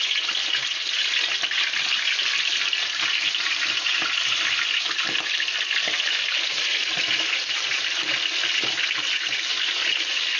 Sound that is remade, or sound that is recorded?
recorded